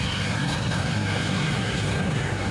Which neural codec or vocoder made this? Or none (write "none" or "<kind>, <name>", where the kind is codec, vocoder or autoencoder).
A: codec, SNAC